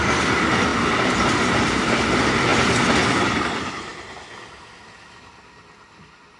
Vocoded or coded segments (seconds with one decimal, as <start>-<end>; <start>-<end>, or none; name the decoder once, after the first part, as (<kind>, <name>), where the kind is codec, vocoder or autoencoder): none